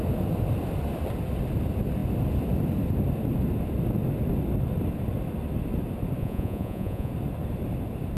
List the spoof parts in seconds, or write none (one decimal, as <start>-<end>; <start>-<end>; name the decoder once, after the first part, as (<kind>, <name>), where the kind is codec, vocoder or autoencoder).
6.2-7.1 (vocoder, Vocos)